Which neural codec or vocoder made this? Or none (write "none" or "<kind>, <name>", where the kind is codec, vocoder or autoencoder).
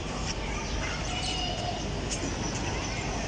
none